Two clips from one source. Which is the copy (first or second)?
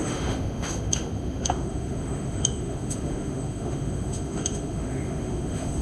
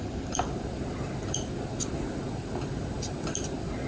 first